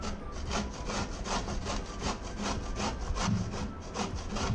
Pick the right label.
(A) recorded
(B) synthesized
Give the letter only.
A